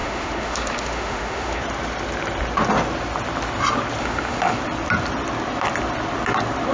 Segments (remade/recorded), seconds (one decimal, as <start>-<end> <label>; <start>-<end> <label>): 0.0-1.6 remade; 1.6-4.0 recorded; 4.0-4.6 remade; 4.6-6.7 recorded